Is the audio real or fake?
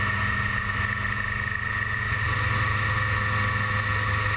real